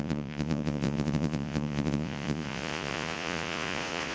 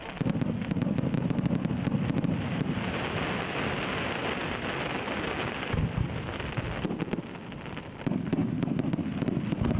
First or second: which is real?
second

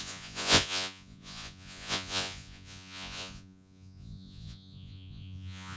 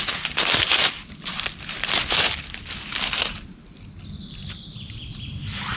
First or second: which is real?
second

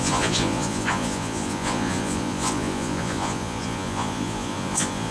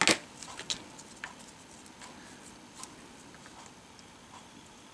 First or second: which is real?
second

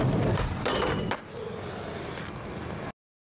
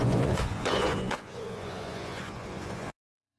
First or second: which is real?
first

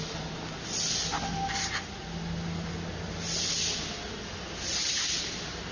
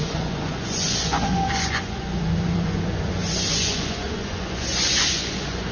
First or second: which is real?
first